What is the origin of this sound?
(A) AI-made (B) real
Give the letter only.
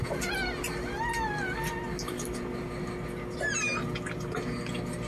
B